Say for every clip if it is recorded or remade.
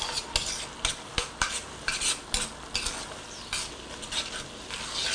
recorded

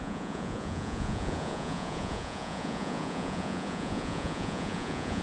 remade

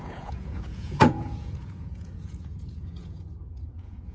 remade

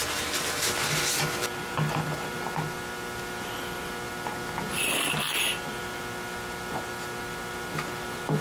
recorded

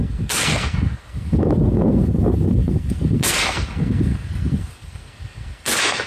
remade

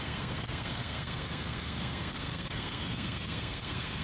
remade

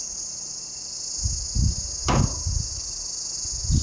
recorded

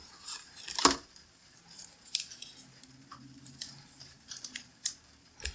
remade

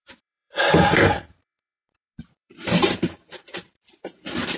remade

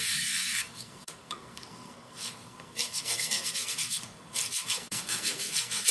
remade